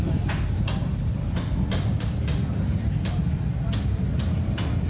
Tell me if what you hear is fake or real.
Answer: real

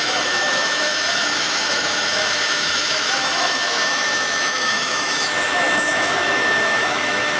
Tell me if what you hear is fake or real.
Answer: fake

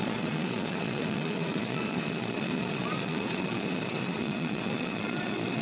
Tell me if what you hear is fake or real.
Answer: fake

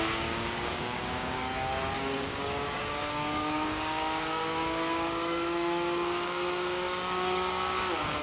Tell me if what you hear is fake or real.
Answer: fake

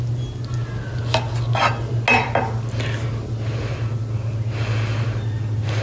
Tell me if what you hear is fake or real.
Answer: real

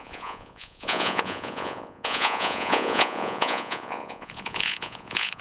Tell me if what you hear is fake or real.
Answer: fake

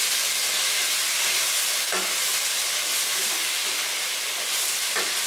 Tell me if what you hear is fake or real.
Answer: real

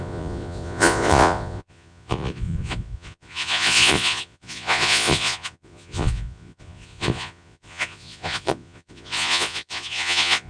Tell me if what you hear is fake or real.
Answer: fake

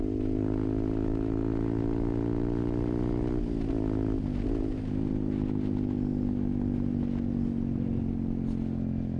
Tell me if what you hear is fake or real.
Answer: real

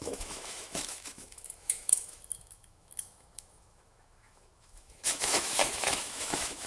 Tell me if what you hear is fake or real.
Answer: fake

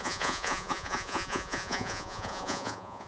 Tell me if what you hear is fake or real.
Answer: fake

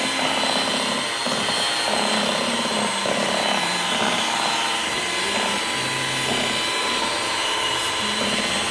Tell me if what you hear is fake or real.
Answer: real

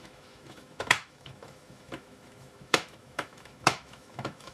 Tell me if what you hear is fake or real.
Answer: fake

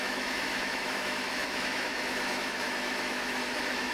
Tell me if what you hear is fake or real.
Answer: fake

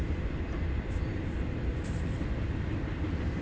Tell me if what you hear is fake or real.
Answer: real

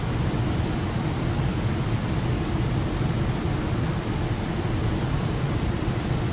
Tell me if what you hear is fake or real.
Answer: real